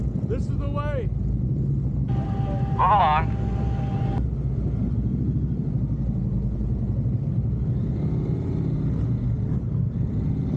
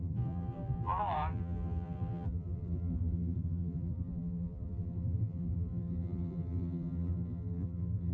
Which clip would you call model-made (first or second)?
second